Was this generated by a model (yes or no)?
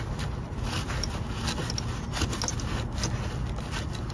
no